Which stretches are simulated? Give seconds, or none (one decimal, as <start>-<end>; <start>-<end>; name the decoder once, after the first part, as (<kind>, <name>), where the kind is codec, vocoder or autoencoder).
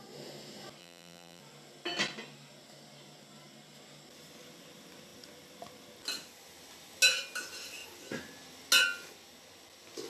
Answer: 0.8-1.4 (vocoder, BigVGAN v2)